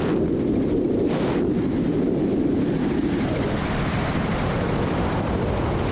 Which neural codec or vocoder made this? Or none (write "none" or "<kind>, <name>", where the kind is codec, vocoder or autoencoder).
vocoder, BigVGAN v2